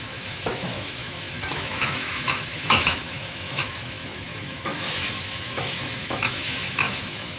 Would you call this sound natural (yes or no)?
no